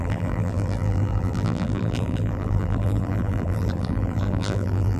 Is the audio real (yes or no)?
no